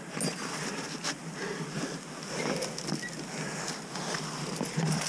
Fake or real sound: real